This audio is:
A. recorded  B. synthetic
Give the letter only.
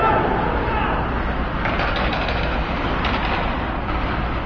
A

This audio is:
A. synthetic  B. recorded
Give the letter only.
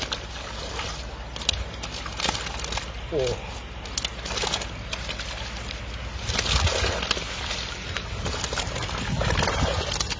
B